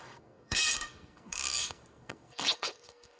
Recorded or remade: remade